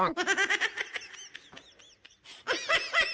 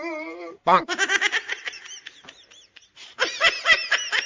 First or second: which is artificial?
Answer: second